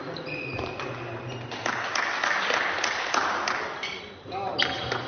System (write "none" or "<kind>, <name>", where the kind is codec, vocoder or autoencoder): none